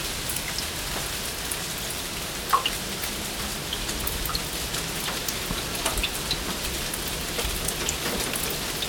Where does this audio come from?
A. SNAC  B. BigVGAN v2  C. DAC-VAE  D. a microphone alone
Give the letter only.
D